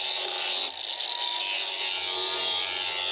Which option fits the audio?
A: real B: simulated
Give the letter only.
A